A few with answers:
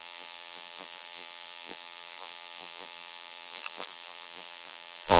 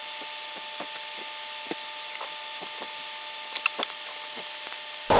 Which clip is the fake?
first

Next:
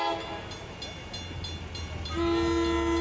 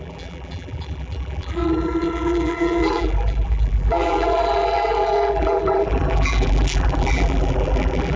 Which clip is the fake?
second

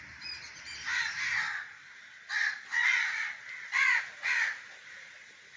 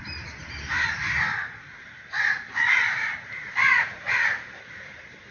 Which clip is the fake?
second